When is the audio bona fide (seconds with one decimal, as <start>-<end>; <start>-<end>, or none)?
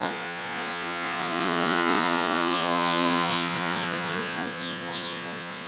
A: none